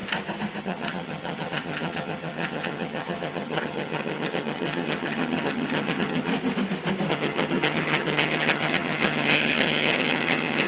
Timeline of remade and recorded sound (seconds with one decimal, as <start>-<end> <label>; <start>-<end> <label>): 0.0-0.6 recorded; 0.6-6.3 remade; 6.3-7.1 recorded; 7.1-10.7 remade